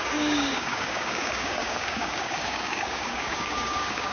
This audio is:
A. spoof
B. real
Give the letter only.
A